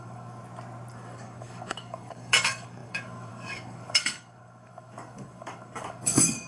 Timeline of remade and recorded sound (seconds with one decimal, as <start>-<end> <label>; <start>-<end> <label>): 0.0-0.4 remade; 0.4-0.9 recorded; 0.9-6.5 remade